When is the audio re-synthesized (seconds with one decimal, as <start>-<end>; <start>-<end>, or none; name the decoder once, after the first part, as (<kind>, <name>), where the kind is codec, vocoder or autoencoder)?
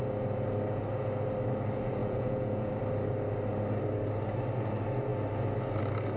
2.0-2.7 (vocoder, Vocos)